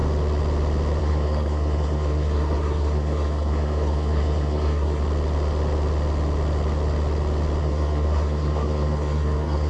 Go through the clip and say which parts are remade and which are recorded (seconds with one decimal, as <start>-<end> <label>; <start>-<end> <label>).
0.0-1.0 recorded; 1.0-5.0 remade; 5.0-7.6 recorded; 7.6-9.7 remade

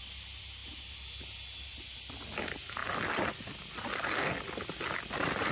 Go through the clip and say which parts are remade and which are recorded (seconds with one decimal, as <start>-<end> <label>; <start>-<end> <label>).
0.0-5.5 recorded